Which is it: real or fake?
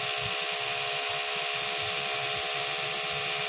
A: real